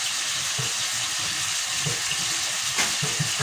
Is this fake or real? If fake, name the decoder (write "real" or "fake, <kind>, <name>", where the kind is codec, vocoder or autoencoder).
real